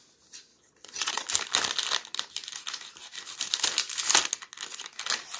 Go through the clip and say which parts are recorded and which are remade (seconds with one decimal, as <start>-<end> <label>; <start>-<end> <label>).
0.0-0.5 recorded; 0.5-1.3 remade; 1.3-5.4 recorded